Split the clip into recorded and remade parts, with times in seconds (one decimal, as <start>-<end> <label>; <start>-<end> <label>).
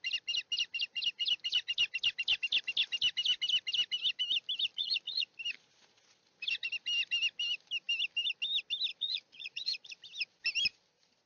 0.0-4.7 recorded; 4.7-5.3 remade; 5.3-8.9 recorded; 8.9-9.9 remade; 9.9-11.3 recorded